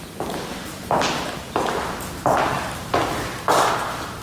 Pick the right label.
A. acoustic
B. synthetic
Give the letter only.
A